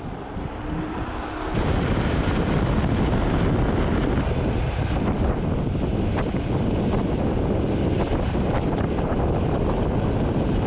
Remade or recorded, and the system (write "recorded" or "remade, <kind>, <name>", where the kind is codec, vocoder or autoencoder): remade, vocoder, BigVGAN v2